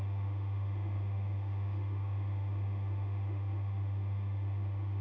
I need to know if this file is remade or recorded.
remade